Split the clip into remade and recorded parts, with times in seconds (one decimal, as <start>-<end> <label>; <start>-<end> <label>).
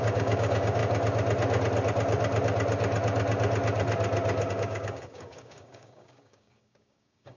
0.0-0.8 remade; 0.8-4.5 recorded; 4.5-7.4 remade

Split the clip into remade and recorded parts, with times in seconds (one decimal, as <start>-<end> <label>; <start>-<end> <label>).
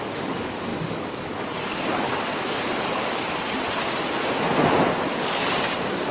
0.0-2.3 remade; 2.3-5.2 recorded; 5.2-6.1 remade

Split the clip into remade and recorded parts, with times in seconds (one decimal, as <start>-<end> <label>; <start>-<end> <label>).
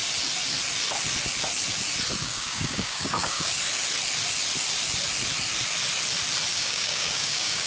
0.0-2.2 recorded; 2.2-3.5 remade; 3.5-6.5 recorded; 6.5-7.7 remade